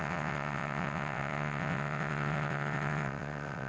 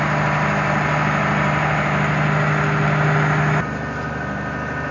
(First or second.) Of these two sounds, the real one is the second